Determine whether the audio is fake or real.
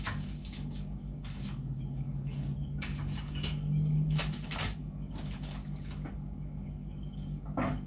fake